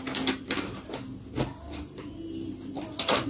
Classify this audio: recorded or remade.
recorded